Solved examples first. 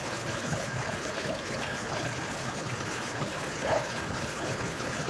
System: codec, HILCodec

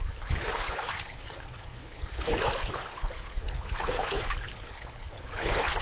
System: codec, HILCodec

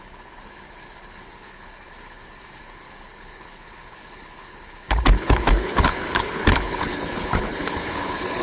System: codec, HILCodec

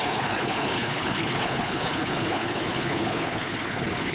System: codec, HILCodec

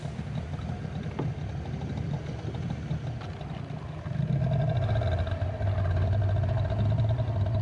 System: none